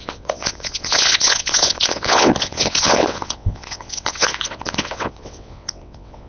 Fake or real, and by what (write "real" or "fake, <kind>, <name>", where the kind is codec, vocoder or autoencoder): fake, vocoder, WaveNeXt